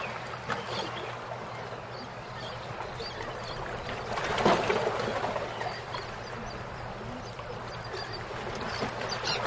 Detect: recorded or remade recorded